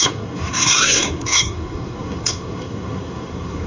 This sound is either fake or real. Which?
fake